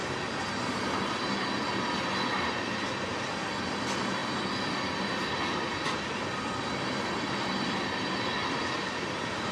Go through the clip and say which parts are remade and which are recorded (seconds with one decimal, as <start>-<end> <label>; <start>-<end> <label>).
0.0-9.5 recorded